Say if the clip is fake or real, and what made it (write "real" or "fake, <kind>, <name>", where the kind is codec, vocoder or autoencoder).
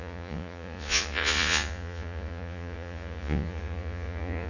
fake, vocoder, Vocos